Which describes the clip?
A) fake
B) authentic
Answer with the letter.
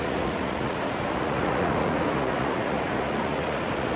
A